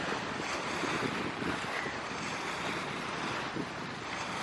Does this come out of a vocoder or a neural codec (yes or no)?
no